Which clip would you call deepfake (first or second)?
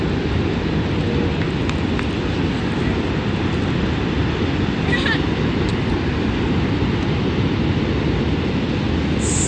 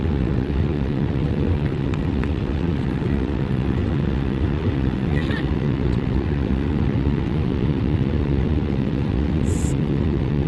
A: second